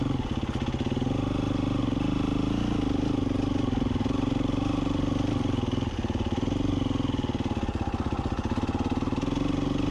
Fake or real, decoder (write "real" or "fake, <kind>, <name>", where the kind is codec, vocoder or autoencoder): real